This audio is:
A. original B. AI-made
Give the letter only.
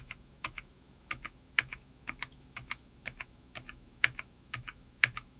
B